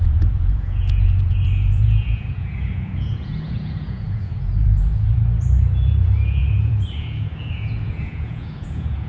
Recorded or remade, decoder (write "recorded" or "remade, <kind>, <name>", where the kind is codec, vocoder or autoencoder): remade, vocoder, Vocos